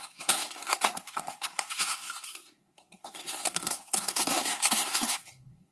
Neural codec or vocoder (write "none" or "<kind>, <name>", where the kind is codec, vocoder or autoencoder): codec, SNAC